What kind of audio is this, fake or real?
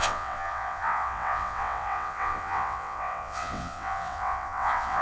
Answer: fake